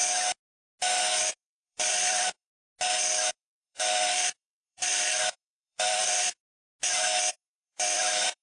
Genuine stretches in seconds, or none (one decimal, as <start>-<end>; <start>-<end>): 0.0-1.3; 2.5-3.3; 6.4-7.3